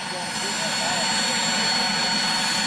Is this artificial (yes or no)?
no